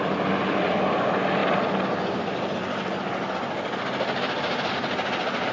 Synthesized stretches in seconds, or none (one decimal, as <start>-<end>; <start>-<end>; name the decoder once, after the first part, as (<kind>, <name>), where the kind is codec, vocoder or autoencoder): none